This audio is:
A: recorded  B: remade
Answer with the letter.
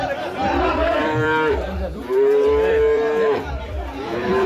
B